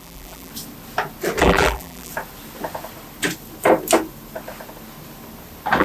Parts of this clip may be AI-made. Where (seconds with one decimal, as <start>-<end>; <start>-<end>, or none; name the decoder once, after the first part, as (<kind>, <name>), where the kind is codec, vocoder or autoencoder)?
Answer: 0.0-0.5 (vocoder, BigVGAN v2); 1.4-2.1